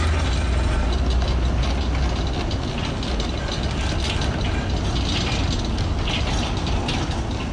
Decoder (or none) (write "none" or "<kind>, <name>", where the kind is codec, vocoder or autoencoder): none